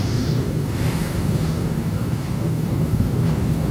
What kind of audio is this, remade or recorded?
remade